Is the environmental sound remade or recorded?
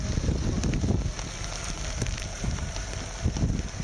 recorded